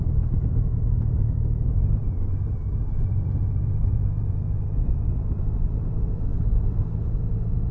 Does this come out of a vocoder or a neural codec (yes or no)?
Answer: yes